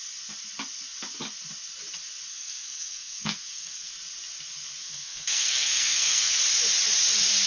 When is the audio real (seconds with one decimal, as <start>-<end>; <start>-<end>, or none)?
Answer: 0.0-2.3; 3.9-4.8; 6.4-7.5